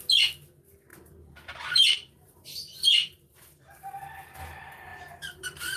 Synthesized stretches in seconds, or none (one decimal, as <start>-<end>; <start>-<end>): 0.9-3.8; 4.9-5.8